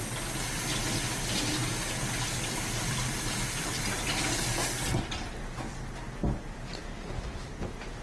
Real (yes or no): yes